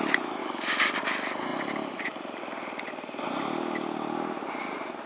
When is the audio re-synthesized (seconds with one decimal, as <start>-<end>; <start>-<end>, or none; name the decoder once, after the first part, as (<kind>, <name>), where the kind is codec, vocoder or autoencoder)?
0.4-1.0 (codec, DAC)